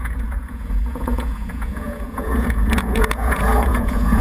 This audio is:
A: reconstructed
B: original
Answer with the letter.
A